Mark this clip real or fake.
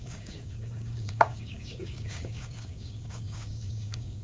fake